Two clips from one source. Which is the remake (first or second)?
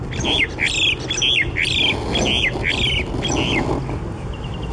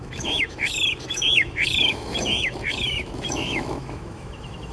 second